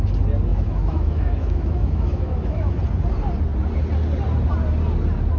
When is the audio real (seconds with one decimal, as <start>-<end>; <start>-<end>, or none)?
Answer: 0.0-0.5; 2.7-5.4